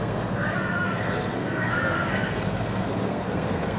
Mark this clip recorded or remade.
remade